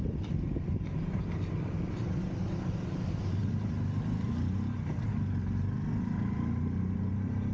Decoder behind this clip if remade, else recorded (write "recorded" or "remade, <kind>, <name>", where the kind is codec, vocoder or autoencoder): recorded